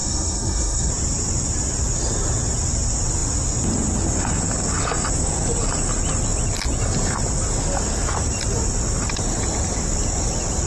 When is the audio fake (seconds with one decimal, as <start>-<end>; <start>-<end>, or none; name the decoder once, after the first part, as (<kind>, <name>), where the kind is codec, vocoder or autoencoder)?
0.0-0.9 (codec, SNAC)